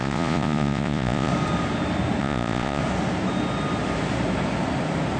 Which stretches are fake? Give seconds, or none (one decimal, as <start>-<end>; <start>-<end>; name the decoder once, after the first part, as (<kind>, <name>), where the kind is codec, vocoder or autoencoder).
0.0-1.3 (vocoder, Vocos); 2.2-2.8